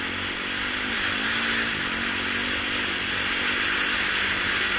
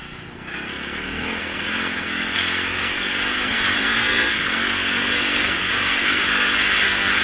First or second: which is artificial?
second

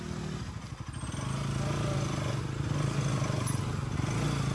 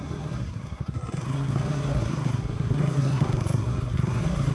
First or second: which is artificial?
second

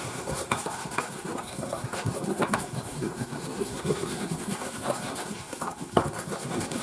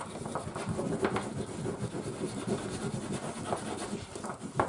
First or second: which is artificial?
first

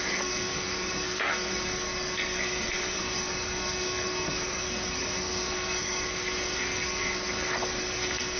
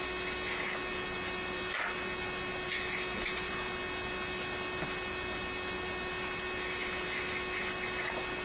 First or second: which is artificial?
first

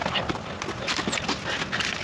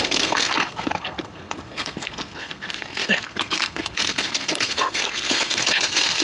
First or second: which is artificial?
second